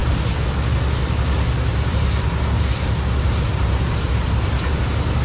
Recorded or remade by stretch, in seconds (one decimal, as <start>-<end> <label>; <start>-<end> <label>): 0.0-1.7 recorded; 1.7-4.8 remade; 4.8-5.2 recorded